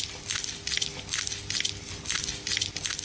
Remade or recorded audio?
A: recorded